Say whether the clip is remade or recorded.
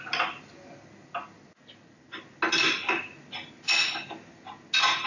recorded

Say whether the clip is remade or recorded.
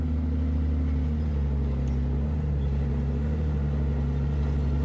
recorded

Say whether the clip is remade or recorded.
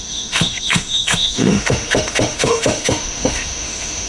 remade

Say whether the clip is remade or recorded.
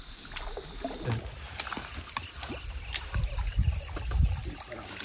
recorded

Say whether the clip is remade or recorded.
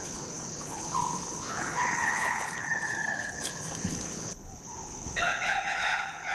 remade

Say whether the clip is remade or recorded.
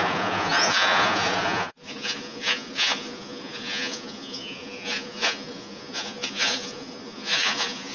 remade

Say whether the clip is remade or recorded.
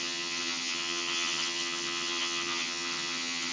remade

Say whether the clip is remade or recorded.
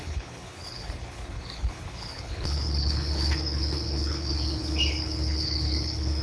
remade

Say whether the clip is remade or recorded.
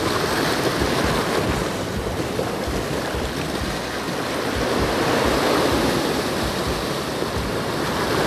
recorded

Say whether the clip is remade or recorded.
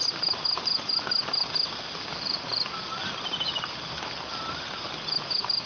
recorded